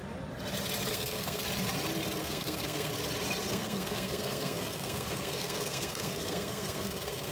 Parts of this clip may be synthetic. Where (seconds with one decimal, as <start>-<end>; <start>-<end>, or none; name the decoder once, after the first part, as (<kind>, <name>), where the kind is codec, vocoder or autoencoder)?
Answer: 0.9-1.4 (codec, SNAC); 2.2-2.9; 3.5-7.3